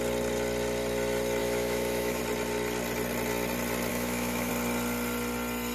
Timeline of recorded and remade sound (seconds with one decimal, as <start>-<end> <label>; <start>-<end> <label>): 0.0-1.4 recorded; 1.4-2.2 remade; 2.2-3.9 recorded; 3.9-4.5 remade; 4.5-5.7 recorded